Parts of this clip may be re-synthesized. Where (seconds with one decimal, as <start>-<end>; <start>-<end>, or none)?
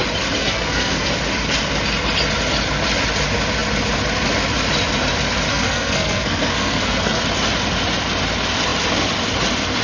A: 0.4-1.1; 5.5-7.2